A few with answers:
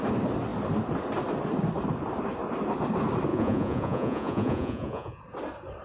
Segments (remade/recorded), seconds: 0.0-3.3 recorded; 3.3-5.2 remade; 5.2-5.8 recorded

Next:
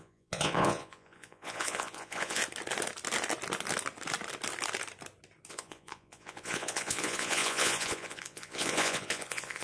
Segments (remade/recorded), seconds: 0.0-2.4 remade; 2.4-5.5 recorded; 5.5-9.6 remade

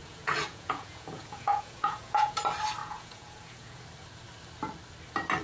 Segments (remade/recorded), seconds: 0.0-2.4 remade; 2.4-2.8 recorded; 2.8-3.8 remade; 3.8-5.4 recorded

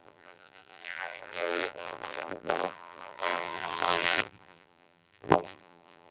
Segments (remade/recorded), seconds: 0.0-6.1 remade

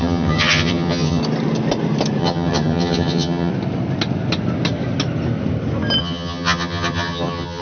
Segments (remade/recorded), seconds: 0.0-1.2 remade; 1.2-2.2 recorded; 2.2-3.5 remade; 3.5-6.0 recorded; 6.0-7.6 remade

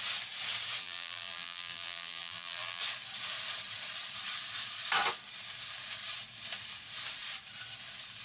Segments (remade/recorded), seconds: 0.0-0.8 recorded; 0.8-2.8 remade; 2.8-8.2 recorded

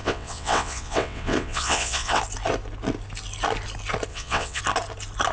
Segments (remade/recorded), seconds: 0.0-2.2 remade; 2.2-4.1 recorded; 4.1-4.6 remade; 4.6-5.3 recorded